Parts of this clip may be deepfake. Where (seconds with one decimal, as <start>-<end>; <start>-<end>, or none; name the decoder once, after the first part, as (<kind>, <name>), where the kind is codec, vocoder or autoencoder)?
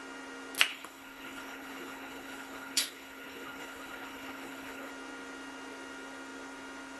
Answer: 0.7-4.9 (codec, HILCodec)